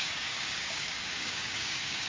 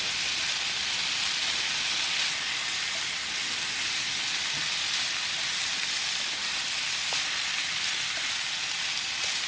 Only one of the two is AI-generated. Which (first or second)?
first